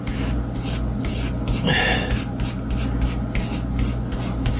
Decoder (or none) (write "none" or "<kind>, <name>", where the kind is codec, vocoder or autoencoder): none